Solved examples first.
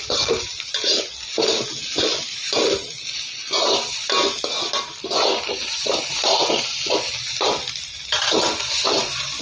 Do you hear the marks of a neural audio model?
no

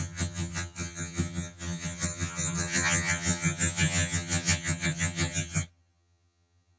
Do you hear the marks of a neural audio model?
yes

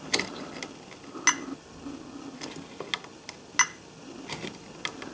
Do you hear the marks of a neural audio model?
no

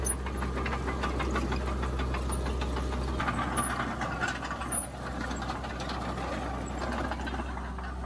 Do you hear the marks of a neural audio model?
no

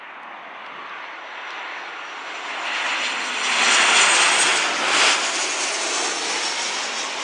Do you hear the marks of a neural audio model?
no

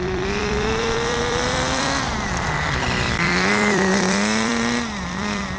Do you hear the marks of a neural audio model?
yes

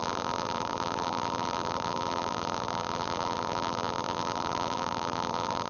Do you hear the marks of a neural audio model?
yes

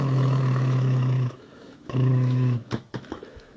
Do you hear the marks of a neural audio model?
yes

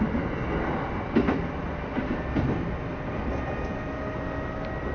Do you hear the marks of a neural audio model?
no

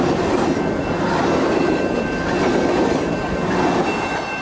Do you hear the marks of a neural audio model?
no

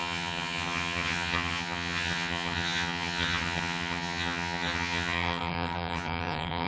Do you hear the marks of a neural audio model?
yes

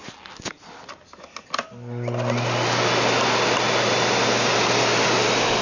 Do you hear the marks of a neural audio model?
no